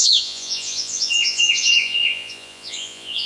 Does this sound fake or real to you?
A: fake